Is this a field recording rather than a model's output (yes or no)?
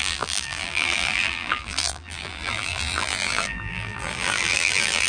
no